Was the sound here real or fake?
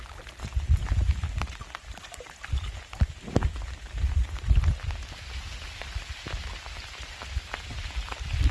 real